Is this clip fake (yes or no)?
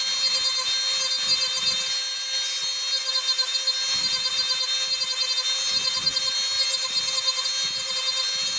no